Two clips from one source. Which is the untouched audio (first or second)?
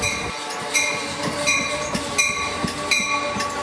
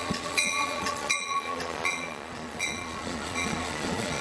first